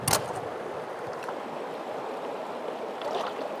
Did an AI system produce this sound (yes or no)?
no